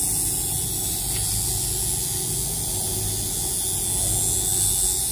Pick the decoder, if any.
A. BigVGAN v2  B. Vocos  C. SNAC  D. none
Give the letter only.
D